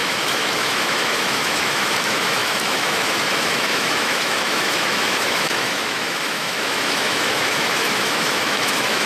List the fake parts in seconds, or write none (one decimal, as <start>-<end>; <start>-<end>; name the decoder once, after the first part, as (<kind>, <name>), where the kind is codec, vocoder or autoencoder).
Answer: 0.0-9.1 (autoencoder, DAC-VAE)